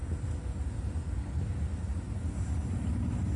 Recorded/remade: recorded